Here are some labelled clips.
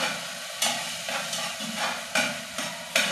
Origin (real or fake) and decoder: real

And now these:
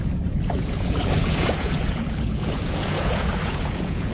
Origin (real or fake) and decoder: fake, vocoder, Vocos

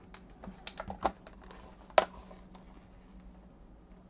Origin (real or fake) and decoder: real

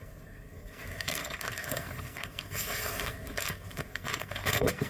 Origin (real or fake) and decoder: fake, codec, SNAC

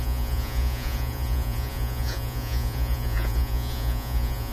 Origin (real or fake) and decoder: fake, vocoder, Vocos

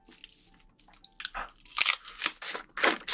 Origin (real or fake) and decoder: real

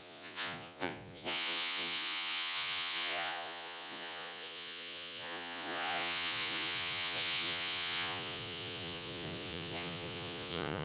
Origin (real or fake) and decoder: fake, vocoder, Vocos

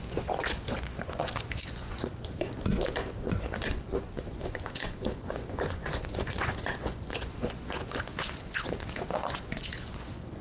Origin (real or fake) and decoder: fake, vocoder, Vocos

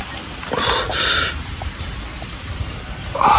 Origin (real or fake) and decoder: real